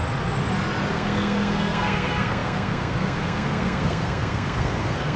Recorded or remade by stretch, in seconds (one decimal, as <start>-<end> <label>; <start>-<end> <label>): 0.0-0.9 recorded; 0.9-5.2 remade